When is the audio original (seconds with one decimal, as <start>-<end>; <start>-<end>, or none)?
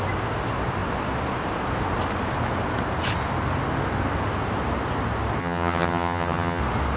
0.0-5.4; 6.6-7.0